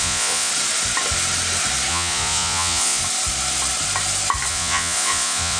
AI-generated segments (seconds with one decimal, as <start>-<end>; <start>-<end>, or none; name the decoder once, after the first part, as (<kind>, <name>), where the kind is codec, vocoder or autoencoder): 0.0-0.5 (vocoder, Vocos); 1.9-3.0; 4.5-5.6